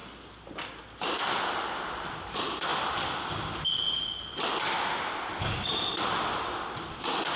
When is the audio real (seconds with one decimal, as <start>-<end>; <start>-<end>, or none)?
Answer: 0.0-7.4